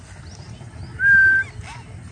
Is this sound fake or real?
real